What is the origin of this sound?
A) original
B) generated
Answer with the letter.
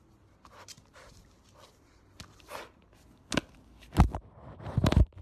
A